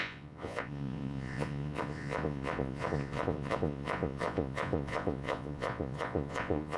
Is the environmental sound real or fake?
fake